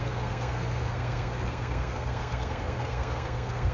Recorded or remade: remade